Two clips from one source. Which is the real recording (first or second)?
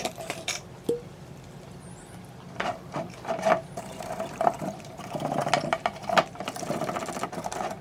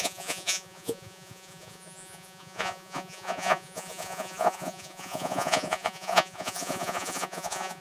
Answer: first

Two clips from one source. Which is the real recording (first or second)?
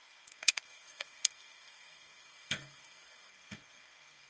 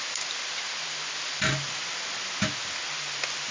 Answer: second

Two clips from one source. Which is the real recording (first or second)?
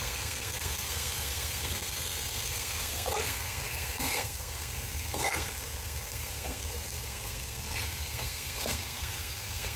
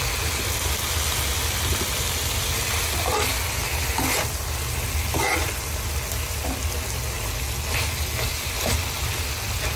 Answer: second